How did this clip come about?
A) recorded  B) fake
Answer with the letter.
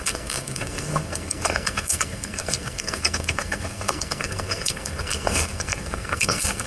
B